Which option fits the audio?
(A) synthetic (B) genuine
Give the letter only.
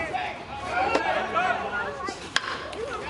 A